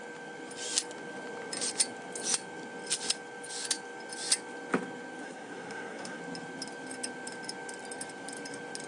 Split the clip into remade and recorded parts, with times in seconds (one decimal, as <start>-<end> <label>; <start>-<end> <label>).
0.0-5.2 recorded; 5.2-6.2 remade; 6.2-8.9 recorded